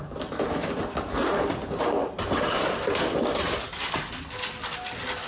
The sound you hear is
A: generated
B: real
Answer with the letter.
B